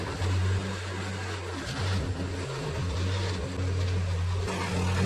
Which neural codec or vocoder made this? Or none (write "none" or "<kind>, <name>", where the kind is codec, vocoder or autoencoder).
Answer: none